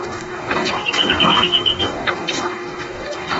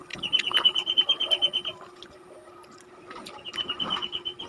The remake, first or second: first